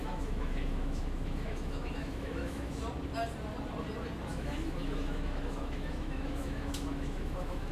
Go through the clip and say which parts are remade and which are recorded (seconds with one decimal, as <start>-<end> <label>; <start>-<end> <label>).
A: 0.0-2.8 remade; 2.8-4.3 recorded; 4.3-7.7 remade